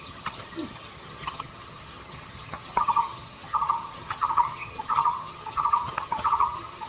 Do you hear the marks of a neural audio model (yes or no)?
yes